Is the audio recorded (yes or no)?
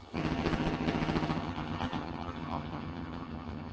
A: no